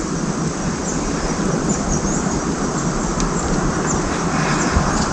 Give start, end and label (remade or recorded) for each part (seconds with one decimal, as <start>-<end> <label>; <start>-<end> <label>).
0.0-5.1 recorded

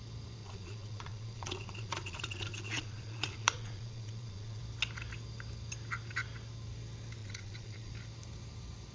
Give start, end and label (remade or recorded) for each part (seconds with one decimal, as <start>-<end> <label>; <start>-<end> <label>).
0.0-0.4 recorded; 0.4-4.6 remade; 4.6-7.2 recorded; 7.2-7.9 remade; 7.9-8.9 recorded

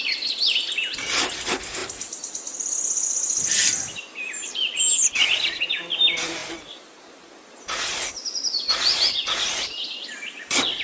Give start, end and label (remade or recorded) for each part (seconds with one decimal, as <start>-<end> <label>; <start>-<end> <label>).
0.0-10.8 recorded

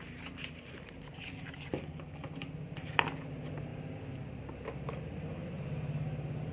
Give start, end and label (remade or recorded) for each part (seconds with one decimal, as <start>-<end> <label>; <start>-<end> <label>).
0.0-6.5 recorded